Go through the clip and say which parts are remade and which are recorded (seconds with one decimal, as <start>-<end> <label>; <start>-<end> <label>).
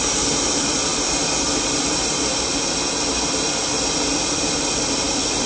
0.0-0.9 remade; 0.9-4.2 recorded; 4.2-5.5 remade